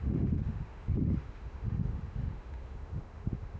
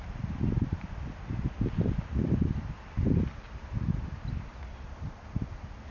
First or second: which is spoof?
first